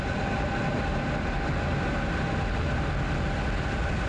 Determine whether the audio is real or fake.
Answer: real